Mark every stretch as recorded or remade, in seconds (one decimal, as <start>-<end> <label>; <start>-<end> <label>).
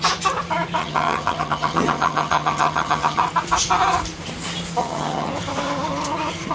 0.0-0.8 recorded; 0.8-3.2 remade; 3.2-4.8 recorded; 4.8-5.3 remade; 5.3-6.5 recorded